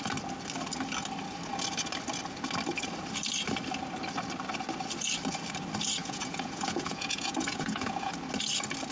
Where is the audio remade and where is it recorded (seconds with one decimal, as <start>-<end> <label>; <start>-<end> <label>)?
0.0-6.0 recorded; 6.0-8.1 remade; 8.1-8.9 recorded